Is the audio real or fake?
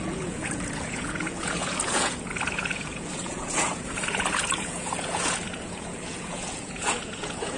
fake